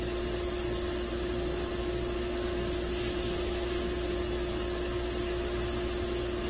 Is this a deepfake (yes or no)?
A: no